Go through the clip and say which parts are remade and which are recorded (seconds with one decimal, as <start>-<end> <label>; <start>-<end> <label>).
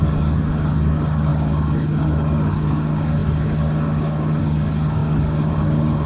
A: 0.0-6.1 remade